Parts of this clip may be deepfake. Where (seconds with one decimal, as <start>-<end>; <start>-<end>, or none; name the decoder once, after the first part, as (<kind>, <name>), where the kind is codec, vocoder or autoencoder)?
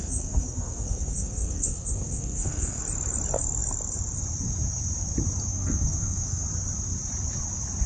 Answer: 0.0-2.8 (codec, SNAC); 5.5-6.4